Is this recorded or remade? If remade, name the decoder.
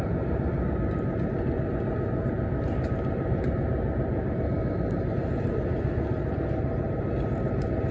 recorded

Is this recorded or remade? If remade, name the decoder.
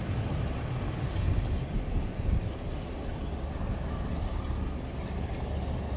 recorded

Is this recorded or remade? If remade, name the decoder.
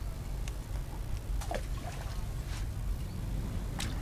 recorded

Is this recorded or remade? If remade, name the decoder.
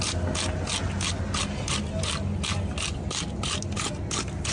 recorded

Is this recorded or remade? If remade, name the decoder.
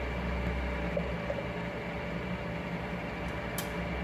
recorded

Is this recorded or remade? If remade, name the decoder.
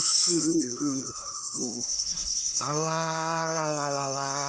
remade, codec, SNAC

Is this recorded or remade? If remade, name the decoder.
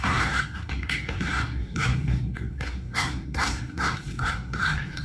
remade, codec, SNAC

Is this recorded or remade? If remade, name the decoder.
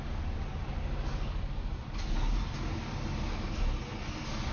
recorded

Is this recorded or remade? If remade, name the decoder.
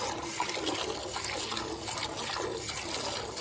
recorded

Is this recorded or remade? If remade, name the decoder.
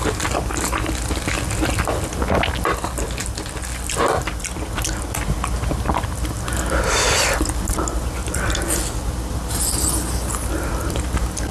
recorded